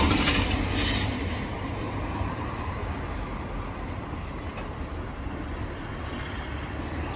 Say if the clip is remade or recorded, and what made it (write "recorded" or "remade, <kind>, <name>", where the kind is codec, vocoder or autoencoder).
recorded